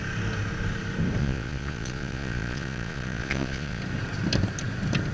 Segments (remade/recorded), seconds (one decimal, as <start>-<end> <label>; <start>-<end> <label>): 0.0-1.2 recorded; 1.2-3.8 remade; 3.8-5.1 recorded